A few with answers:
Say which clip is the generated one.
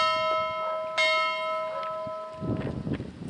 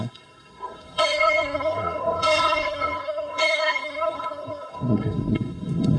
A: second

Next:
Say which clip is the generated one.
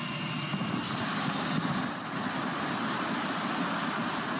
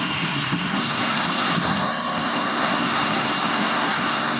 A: second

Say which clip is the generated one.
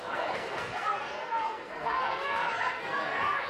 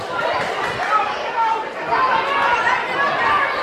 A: first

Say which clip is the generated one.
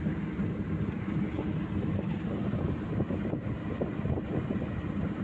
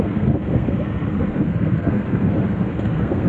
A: second